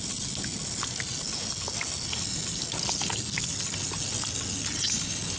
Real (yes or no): yes